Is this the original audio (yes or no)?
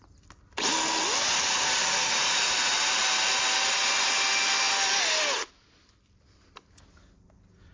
yes